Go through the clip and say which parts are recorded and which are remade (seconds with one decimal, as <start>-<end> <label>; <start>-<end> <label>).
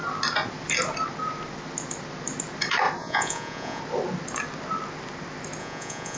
0.0-3.0 recorded; 3.0-3.8 remade; 3.8-5.6 recorded; 5.6-6.2 remade